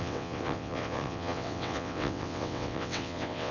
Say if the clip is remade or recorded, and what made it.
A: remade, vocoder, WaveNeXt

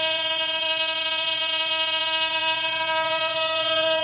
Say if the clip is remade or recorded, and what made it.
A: remade, vocoder, WaveNeXt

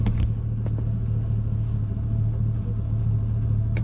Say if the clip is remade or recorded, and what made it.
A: recorded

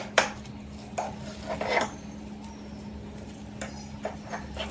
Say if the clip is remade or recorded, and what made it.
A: recorded